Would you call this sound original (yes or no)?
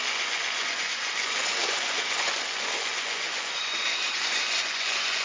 no